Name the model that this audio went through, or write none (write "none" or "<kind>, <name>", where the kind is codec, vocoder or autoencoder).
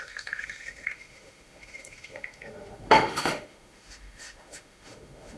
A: autoencoder, DAC-VAE